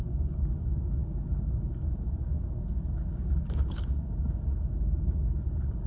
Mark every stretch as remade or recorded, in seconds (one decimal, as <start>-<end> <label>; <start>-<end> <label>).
0.0-5.9 remade

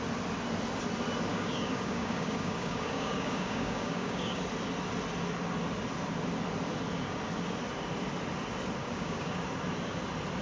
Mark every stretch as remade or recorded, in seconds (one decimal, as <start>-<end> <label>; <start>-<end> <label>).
0.0-1.3 recorded; 1.3-4.4 remade; 4.4-8.8 recorded; 8.8-9.4 remade; 9.4-10.4 recorded

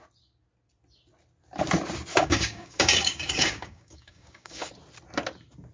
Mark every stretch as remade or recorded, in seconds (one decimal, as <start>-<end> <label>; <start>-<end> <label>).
0.0-2.1 recorded; 2.1-4.7 remade; 4.7-5.7 recorded

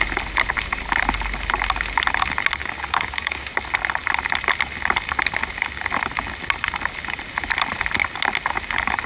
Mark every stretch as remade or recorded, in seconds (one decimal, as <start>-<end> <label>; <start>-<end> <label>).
0.0-2.6 recorded; 2.6-3.5 remade; 3.5-9.1 recorded